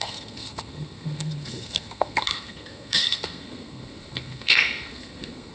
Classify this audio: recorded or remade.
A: remade